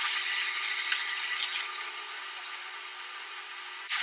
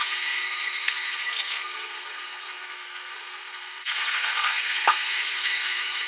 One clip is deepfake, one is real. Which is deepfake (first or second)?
second